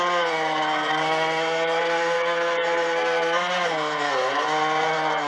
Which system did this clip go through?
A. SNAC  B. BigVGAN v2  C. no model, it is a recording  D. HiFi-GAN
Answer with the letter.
A